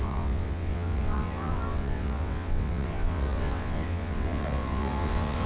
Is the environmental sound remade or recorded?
remade